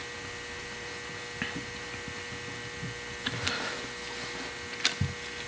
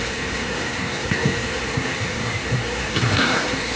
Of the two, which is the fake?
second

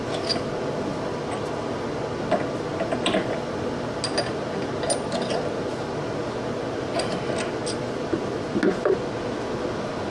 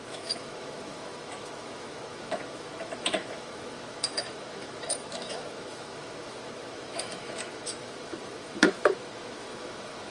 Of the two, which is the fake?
second